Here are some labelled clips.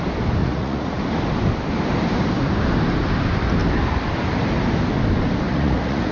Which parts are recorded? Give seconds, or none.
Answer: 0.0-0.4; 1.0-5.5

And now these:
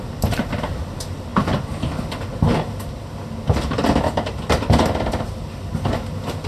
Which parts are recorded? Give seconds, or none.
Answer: 1.3-5.2